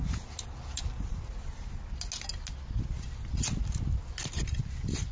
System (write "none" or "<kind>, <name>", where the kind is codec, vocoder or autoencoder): none